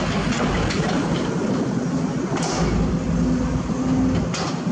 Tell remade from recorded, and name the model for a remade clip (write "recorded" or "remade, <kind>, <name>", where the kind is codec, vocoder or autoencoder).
recorded